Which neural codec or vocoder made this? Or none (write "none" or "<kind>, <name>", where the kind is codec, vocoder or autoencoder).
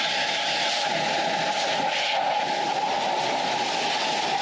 none